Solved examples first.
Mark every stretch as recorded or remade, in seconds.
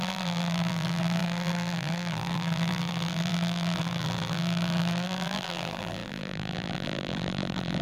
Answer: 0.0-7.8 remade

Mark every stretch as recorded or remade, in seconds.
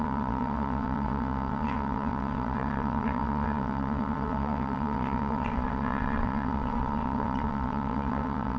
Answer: 0.0-8.6 remade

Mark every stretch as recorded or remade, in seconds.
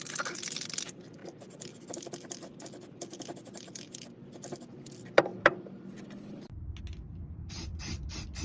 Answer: 0.0-8.4 recorded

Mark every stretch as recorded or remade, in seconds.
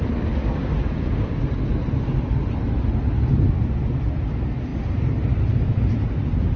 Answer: 0.0-0.4 recorded; 0.4-1.4 remade; 1.4-6.6 recorded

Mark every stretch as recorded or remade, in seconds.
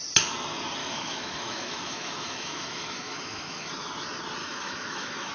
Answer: 0.0-0.8 recorded; 0.8-3.7 remade; 3.7-4.4 recorded; 4.4-5.3 remade